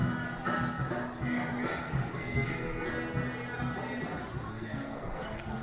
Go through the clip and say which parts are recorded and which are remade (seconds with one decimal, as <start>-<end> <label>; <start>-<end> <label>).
0.0-1.8 recorded; 1.8-2.9 remade; 2.9-4.5 recorded; 4.5-5.6 remade